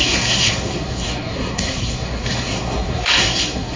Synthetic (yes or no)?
yes